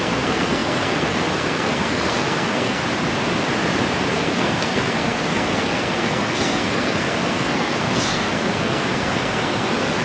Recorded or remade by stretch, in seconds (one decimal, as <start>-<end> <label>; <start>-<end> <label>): 0.0-2.8 remade; 2.8-4.1 recorded; 4.1-10.0 remade